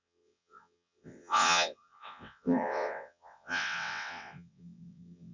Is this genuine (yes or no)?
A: no